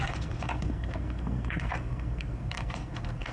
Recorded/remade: remade